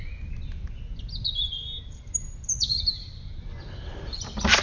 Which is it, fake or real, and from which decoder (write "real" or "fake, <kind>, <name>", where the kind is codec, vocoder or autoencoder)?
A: real